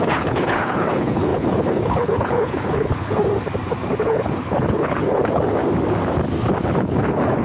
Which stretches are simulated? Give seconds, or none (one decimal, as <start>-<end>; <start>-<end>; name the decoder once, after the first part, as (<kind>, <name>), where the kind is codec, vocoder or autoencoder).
0.0-3.2 (codec, HILCodec); 3.9-5.6; 6.6-7.4